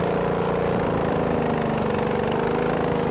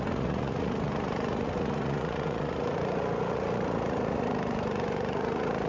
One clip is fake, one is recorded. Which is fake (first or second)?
second